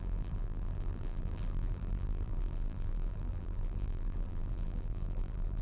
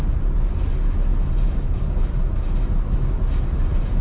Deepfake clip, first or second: first